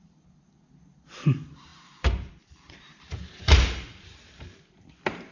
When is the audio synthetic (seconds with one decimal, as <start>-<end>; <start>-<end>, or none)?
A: 0.0-5.3